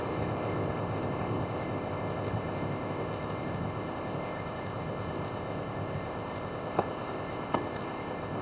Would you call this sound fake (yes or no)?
yes